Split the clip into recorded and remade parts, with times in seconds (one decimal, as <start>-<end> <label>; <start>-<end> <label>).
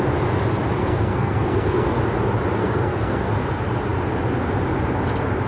0.0-0.8 recorded; 0.8-2.0 remade; 2.0-2.6 recorded; 2.6-3.3 remade; 3.3-5.5 recorded